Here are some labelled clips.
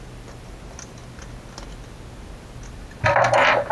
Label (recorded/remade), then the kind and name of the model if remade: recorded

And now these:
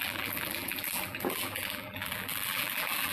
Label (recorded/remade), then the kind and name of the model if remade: remade, vocoder, BigVGAN v2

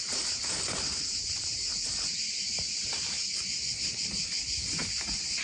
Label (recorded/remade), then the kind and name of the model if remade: recorded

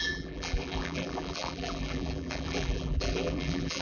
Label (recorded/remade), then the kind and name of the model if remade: remade, vocoder, BigVGAN v2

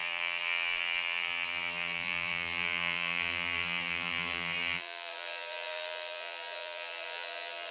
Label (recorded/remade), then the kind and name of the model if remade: remade, vocoder, BigVGAN v2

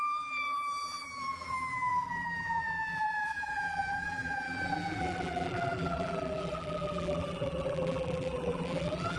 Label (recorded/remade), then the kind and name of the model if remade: remade, vocoder, BigVGAN v2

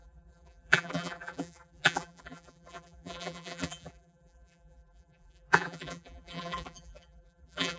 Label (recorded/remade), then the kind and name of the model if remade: remade, vocoder, BigVGAN v2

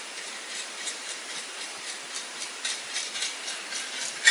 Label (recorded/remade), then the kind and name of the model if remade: remade, vocoder, BigVGAN v2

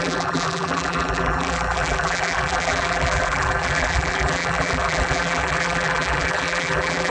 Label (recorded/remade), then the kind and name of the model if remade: remade, vocoder, BigVGAN v2